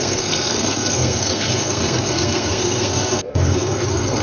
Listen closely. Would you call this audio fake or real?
fake